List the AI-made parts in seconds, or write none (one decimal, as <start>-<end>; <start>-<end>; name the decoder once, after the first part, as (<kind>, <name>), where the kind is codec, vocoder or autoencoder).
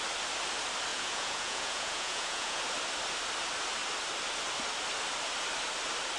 0.9-2.6 (vocoder, Vocos)